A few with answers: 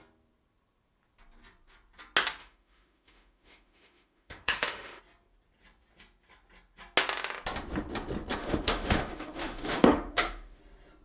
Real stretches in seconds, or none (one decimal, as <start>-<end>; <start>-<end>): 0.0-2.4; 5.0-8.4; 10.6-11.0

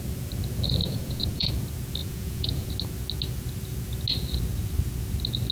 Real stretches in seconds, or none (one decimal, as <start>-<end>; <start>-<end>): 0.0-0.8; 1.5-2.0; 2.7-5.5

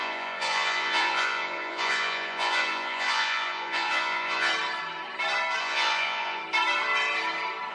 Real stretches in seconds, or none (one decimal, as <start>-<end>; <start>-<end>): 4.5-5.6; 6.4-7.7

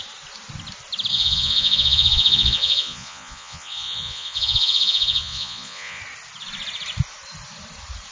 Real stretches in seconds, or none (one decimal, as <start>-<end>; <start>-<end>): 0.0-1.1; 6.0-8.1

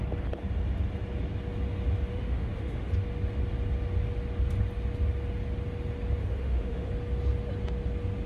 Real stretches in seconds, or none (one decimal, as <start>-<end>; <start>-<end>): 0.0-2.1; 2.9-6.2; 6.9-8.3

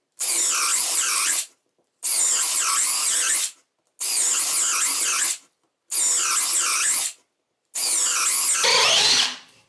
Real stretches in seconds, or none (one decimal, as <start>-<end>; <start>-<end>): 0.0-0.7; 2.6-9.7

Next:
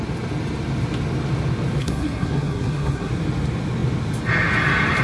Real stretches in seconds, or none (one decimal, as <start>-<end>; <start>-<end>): 0.0-1.8; 3.1-5.0

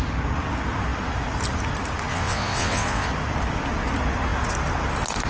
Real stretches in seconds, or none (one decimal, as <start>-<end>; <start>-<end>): 0.0-2.1; 3.1-5.3